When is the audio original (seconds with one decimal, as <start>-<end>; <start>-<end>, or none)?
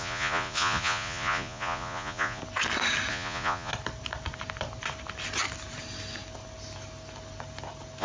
2.4-3.1; 3.7-8.0